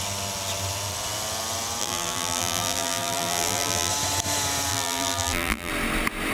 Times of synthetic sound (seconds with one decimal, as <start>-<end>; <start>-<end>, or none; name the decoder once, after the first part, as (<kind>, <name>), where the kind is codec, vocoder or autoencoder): 1.8-3.9 (vocoder, BigVGAN v2); 4.7-5.7